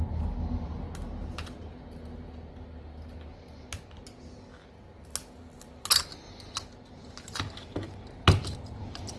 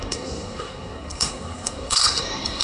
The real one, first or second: first